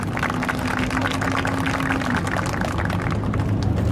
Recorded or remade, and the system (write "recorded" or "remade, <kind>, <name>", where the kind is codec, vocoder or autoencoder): recorded